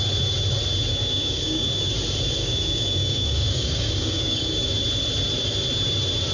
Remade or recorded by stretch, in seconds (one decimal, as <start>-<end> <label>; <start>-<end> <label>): 0.0-0.9 recorded; 0.9-1.9 remade; 1.9-2.4 recorded; 2.4-4.7 remade; 4.7-6.3 recorded

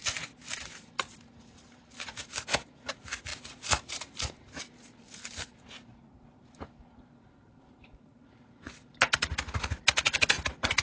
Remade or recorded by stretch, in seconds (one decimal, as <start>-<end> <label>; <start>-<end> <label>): 0.0-2.2 remade; 2.2-3.3 recorded; 3.3-8.3 remade; 8.3-10.8 recorded